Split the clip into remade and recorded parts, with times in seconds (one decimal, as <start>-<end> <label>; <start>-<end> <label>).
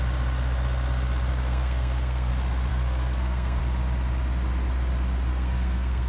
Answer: 0.0-1.3 recorded; 1.3-2.3 remade; 2.3-2.7 recorded; 2.7-3.6 remade; 3.6-5.3 recorded; 5.3-6.1 remade